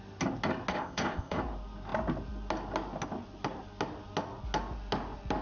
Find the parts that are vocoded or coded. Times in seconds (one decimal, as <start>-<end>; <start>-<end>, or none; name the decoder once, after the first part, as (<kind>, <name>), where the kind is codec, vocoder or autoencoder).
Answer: 0.7-1.4 (codec, ZipCodec)